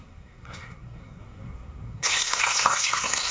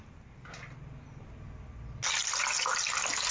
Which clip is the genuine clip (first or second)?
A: second